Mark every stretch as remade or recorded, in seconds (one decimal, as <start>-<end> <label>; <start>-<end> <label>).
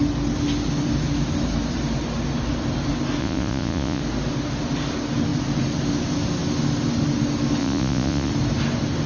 0.0-3.2 recorded; 3.2-4.0 remade; 4.0-7.6 recorded; 7.6-8.3 remade; 8.3-9.1 recorded